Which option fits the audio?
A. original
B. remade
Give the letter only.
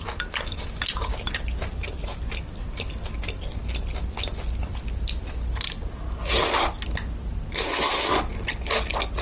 A